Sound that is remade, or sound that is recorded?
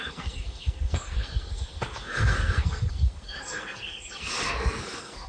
remade